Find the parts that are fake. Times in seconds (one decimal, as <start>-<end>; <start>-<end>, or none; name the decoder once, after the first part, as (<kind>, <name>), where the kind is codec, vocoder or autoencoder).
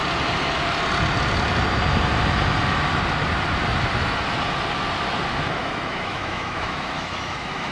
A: 5.6-7.7 (autoencoder, DAC-VAE)